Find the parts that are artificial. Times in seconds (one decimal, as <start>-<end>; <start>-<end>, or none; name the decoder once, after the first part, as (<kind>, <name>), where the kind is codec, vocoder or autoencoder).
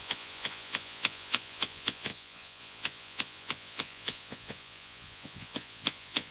0.0-6.3 (vocoder, Vocos)